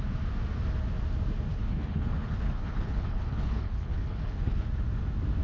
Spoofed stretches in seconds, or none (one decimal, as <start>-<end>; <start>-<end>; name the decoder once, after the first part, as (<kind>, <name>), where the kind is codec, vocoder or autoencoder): 1.5-4.7 (codec, HILCodec)